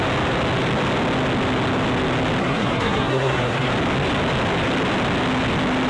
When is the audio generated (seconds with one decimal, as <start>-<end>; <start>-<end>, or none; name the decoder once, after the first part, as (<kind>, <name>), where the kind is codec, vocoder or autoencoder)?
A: 2.4-3.7 (codec, SNAC)